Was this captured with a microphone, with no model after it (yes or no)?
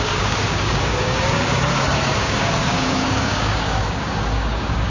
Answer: no